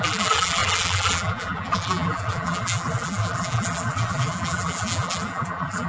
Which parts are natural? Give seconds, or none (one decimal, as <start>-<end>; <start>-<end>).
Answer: none